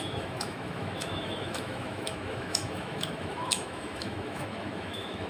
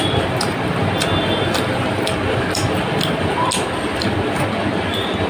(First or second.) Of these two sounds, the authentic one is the second